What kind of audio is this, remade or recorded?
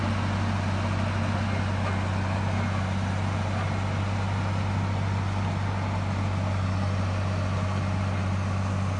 recorded